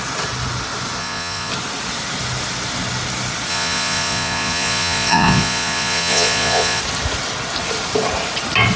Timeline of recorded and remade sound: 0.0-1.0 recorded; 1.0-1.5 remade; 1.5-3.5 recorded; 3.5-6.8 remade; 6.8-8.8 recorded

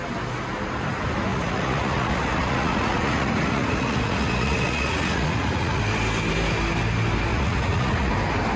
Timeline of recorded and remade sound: 0.0-1.3 recorded; 1.3-5.8 remade; 5.8-7.3 recorded; 7.3-8.1 remade; 8.1-8.6 recorded

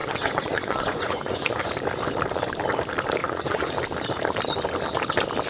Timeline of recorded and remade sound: 0.0-1.7 remade; 1.7-3.2 recorded; 3.2-3.7 remade; 3.7-5.5 recorded

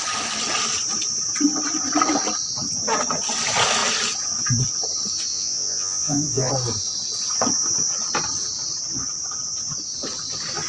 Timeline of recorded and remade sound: 0.0-5.3 recorded; 5.3-6.5 remade; 6.5-10.7 recorded

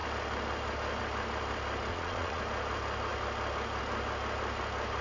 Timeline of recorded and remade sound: 0.0-1.9 recorded; 1.9-2.4 remade; 2.4-5.0 recorded

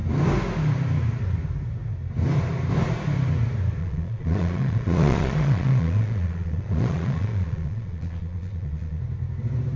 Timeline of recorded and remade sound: 0.0-3.8 recorded; 3.8-9.0 remade; 9.0-9.8 recorded

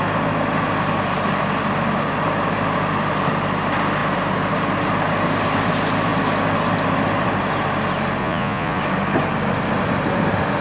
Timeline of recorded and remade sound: 0.0-8.2 recorded; 8.2-8.8 remade; 8.8-10.6 recorded

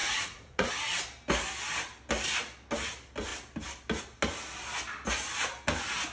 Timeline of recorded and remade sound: 0.0-0.7 remade; 0.7-6.1 recorded